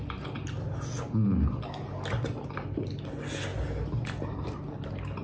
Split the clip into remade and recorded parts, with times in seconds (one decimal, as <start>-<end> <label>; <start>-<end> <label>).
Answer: 0.0-5.2 recorded